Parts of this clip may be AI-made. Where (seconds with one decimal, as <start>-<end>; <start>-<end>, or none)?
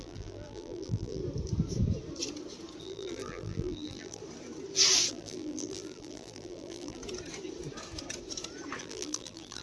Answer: 0.0-1.2; 2.8-4.2; 5.1-7.0; 8.8-9.6